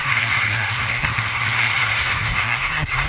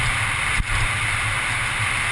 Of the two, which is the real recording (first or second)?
second